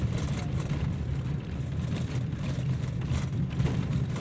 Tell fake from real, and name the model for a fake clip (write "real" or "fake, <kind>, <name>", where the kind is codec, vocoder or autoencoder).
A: real